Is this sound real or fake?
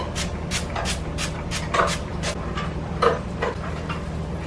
real